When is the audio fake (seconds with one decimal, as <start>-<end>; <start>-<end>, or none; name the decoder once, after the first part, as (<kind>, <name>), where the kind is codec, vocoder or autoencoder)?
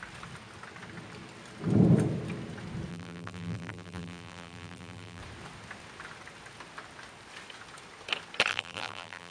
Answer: 2.9-5.2 (vocoder, BigVGAN v2); 8.5-9.3